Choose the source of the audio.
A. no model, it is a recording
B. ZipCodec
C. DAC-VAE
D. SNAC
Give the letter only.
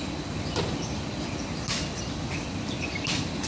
A